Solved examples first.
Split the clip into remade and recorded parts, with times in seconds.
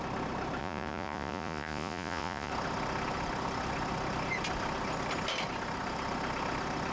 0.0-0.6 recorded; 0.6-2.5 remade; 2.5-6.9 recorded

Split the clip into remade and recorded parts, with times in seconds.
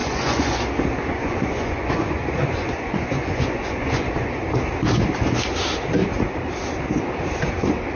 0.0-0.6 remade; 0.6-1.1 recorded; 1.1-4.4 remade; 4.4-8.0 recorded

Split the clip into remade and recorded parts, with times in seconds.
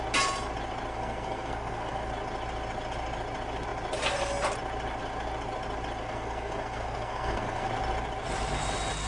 0.0-0.9 recorded; 0.9-2.1 remade; 2.1-6.0 recorded; 6.0-7.7 remade; 7.7-9.1 recorded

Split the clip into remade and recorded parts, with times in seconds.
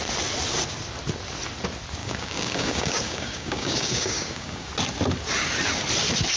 0.0-2.0 recorded; 2.0-4.7 remade; 4.7-6.4 recorded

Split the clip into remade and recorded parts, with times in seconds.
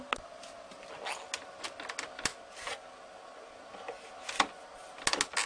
0.0-5.5 recorded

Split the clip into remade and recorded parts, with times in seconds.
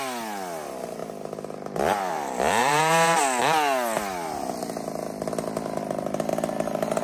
0.0-2.6 recorded; 2.6-3.2 remade; 3.2-7.0 recorded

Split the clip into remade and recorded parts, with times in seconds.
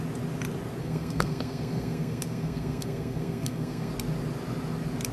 0.0-0.8 recorded; 0.8-3.9 remade; 3.9-5.1 recorded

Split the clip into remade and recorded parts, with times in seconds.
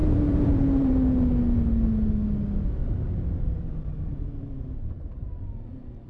0.0-0.9 remade; 0.9-2.8 recorded; 2.8-6.1 remade